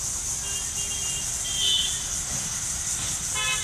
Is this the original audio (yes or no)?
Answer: yes